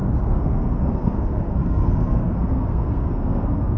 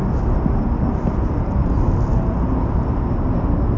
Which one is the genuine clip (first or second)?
second